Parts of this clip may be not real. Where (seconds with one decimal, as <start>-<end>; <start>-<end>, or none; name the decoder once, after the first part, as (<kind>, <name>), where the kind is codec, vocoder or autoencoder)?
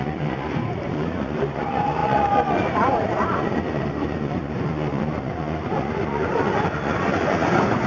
0.0-7.9 (vocoder, Vocos)